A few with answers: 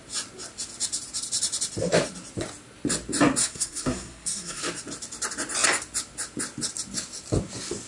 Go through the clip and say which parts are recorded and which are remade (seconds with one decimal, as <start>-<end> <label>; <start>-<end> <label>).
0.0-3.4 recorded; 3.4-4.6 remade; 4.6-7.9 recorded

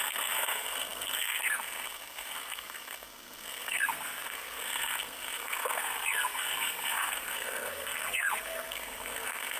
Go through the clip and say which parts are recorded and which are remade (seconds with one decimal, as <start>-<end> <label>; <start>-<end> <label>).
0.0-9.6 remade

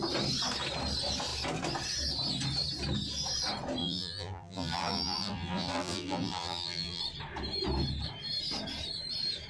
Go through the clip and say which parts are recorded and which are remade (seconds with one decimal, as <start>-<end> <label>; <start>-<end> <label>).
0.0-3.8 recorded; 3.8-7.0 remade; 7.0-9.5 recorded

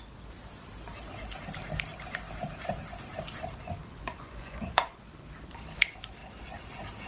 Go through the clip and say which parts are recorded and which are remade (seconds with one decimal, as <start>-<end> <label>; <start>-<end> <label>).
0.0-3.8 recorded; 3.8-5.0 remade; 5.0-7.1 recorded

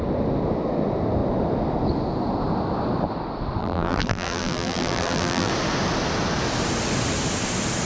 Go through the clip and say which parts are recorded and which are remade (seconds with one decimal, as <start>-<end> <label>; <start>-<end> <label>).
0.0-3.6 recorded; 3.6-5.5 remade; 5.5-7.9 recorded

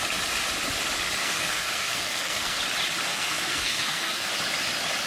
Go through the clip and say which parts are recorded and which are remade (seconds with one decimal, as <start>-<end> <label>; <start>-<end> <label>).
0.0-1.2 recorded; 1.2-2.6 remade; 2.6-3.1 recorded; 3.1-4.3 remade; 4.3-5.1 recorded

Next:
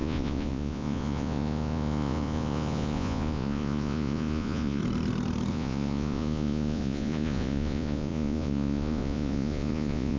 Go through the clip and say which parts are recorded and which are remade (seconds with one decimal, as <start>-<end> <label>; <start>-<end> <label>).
0.0-4.8 remade; 4.8-5.5 recorded; 5.5-10.2 remade